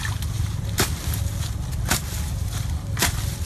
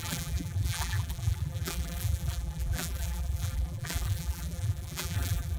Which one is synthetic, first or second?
second